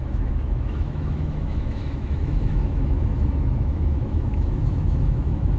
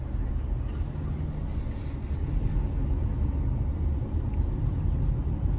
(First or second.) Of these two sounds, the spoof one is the first